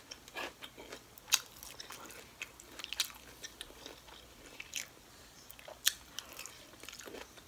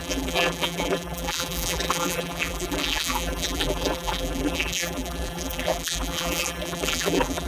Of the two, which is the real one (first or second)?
first